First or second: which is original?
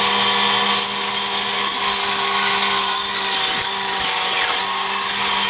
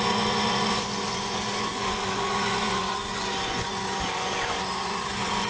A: first